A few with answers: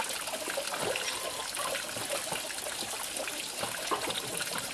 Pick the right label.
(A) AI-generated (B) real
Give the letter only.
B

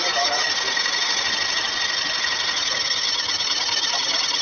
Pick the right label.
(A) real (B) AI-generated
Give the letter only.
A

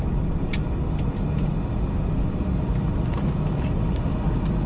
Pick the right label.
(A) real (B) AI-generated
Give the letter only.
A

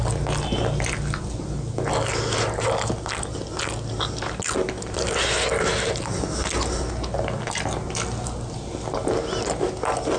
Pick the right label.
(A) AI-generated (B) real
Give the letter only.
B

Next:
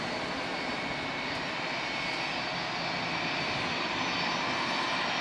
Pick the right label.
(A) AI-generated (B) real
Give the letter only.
B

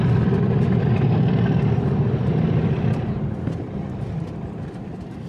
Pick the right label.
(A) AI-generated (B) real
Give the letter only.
B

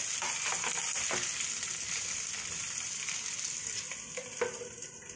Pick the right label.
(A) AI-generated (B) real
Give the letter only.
B